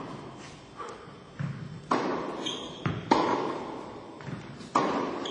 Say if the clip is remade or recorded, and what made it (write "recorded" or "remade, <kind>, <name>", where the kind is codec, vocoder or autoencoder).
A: recorded